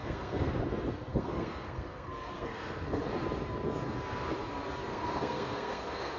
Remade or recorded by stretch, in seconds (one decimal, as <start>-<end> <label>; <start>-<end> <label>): 0.0-0.6 remade; 0.6-1.1 recorded; 1.1-3.0 remade; 3.0-4.9 recorded; 4.9-6.2 remade